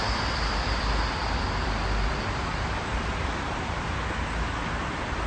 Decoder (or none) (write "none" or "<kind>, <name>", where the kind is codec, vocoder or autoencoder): vocoder, BigVGAN v2